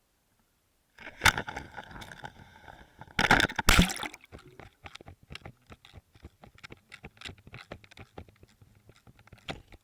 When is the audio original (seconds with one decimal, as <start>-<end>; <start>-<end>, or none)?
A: 0.0-9.8